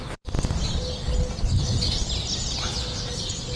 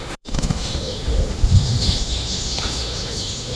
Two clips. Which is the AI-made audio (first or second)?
second